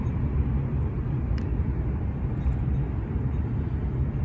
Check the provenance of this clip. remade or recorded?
recorded